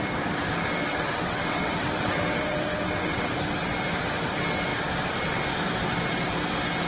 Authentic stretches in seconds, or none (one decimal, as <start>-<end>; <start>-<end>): 0.0-0.9; 3.3-6.9